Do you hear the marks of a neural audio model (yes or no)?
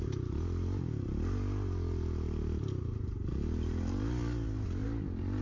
no